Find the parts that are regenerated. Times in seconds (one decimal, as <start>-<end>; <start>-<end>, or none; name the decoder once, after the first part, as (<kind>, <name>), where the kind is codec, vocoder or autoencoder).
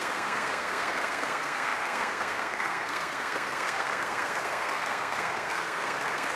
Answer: 0.0-6.4 (codec, SNAC)